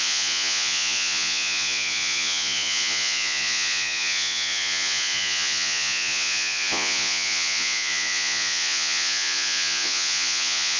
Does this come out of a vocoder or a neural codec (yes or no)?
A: yes